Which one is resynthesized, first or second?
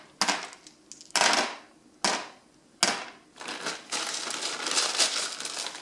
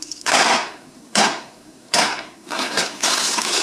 second